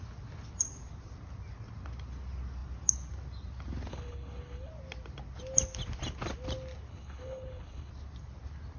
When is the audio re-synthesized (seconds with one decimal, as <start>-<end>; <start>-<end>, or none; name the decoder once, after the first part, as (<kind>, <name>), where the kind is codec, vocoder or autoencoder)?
3.9-4.7 (codec, HILCodec); 6.9-7.9